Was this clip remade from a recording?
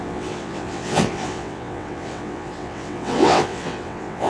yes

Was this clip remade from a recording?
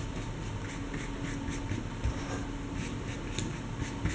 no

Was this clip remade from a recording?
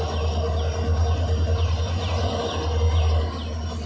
no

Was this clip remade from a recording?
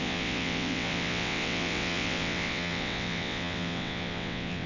yes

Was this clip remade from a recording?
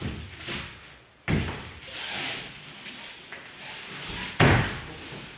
no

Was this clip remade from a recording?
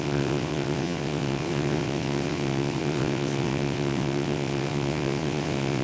yes